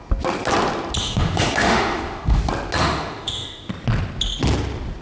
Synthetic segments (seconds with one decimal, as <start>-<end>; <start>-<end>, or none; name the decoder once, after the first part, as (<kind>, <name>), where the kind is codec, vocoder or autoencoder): 1.0-2.4 (autoencoder, DAC-VAE); 2.8-3.7